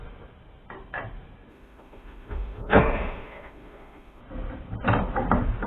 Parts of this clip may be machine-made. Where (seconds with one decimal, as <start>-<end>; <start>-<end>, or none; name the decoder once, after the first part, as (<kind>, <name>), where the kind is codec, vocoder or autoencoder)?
1.5-4.2 (autoencoder, DAC-VAE)